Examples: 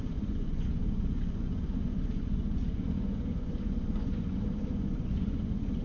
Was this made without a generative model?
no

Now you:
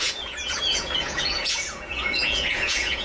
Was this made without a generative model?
no